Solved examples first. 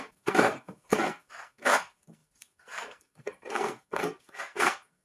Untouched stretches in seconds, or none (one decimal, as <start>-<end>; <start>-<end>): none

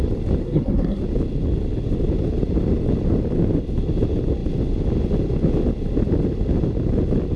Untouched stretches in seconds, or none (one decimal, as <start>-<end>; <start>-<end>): 0.0-0.4; 1.0-7.4

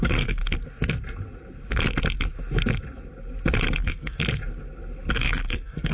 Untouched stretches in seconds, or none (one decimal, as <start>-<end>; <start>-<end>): 0.4-3.8; 4.2-5.1

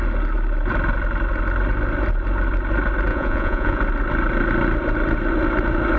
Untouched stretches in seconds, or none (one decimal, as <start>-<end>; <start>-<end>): 0.0-3.1; 3.8-6.0

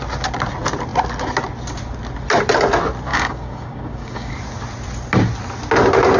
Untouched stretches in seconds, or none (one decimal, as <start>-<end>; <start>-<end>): 0.0-3.1; 4.3-6.2

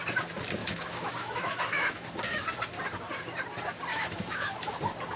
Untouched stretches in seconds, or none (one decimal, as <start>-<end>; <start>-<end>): 0.0-0.6; 2.2-3.9; 4.7-5.2

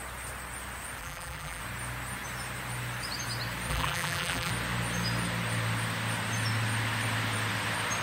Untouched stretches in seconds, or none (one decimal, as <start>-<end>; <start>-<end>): 0.0-1.0; 1.6-3.7; 4.5-8.0

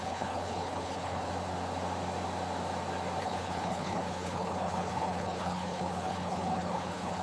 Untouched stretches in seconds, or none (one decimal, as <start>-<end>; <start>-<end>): 1.3-3.2